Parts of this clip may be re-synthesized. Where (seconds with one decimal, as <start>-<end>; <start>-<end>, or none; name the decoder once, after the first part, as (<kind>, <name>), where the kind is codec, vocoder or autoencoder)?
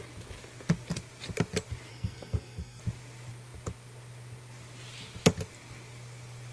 1.9-2.8 (codec, SNAC)